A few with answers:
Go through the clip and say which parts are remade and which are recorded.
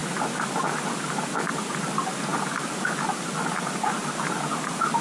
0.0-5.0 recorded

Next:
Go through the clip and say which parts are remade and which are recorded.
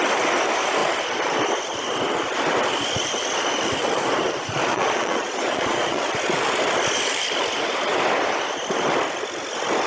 0.0-4.7 recorded; 4.7-6.0 remade; 6.0-9.9 recorded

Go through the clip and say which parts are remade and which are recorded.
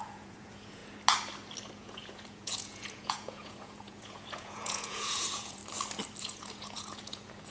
0.0-0.8 remade; 0.8-1.7 recorded; 1.7-5.6 remade; 5.6-6.2 recorded; 6.2-7.5 remade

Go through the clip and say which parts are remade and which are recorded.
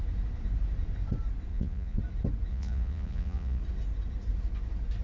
0.0-1.5 recorded; 1.5-2.0 remade; 2.0-2.5 recorded; 2.5-3.6 remade; 3.6-5.0 recorded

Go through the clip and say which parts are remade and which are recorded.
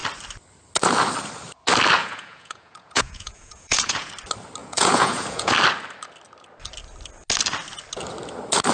0.0-2.0 recorded; 2.0-4.1 remade; 4.1-4.6 recorded; 4.6-5.5 remade; 5.5-8.7 recorded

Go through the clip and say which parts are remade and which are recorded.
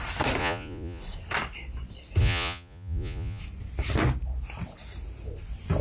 0.0-0.4 recorded; 0.4-1.0 remade; 1.0-2.2 recorded; 2.2-3.4 remade; 3.4-5.8 recorded